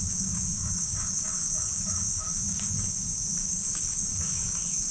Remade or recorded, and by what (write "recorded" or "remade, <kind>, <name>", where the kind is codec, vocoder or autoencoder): remade, codec, DAC